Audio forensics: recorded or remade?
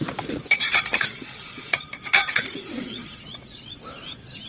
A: remade